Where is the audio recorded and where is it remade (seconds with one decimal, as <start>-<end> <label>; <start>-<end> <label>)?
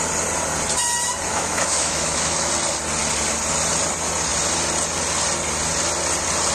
0.0-1.3 recorded; 1.3-2.5 remade; 2.5-6.5 recorded